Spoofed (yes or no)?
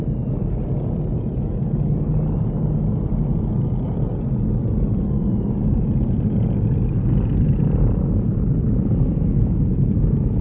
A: no